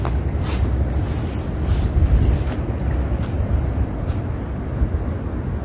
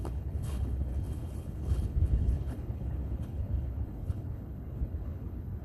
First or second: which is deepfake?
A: second